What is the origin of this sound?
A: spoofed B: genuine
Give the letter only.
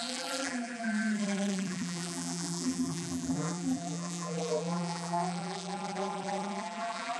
A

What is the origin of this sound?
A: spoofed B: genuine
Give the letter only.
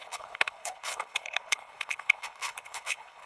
A